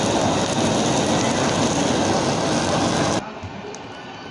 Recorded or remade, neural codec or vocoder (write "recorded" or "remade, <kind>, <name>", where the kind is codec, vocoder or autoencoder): recorded